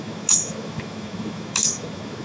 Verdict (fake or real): fake